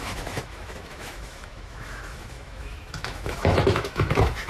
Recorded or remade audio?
remade